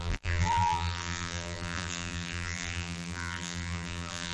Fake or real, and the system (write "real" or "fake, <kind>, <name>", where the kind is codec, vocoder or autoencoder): fake, vocoder, BigVGAN v2